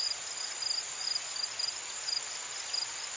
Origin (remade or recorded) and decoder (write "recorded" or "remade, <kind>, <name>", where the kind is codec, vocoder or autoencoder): recorded